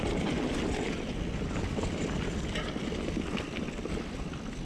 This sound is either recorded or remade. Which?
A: recorded